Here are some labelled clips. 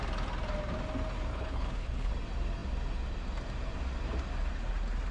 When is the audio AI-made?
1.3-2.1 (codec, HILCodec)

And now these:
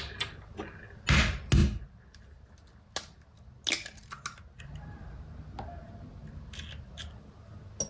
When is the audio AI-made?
none

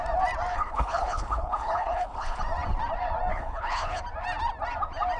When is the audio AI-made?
0.5-2.4 (codec, HILCodec); 3.3-4.0

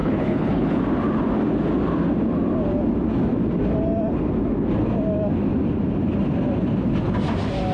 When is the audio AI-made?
0.0-0.8 (codec, HILCodec)

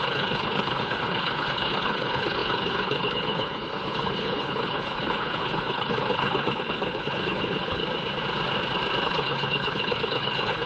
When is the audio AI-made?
0.0-7.8 (codec, HILCodec); 9.0-10.7

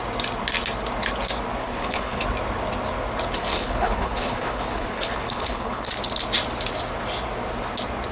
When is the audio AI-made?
1.6-2.2 (codec, HILCodec); 3.4-5.9

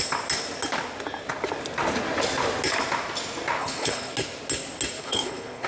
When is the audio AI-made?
3.6-4.1 (codec, HILCodec); 5.0-5.7

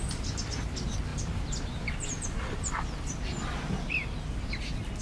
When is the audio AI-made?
none